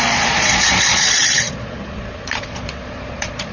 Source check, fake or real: fake